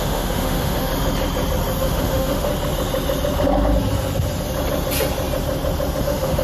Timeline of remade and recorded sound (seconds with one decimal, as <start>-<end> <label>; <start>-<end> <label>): 0.0-0.9 remade; 0.9-1.8 recorded; 1.8-2.5 remade; 2.5-6.0 recorded; 6.0-6.4 remade